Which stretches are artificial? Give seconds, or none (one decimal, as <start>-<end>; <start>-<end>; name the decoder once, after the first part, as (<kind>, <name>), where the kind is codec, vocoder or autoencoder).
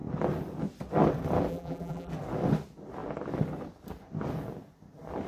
1.5-2.1 (vocoder, BigVGAN v2)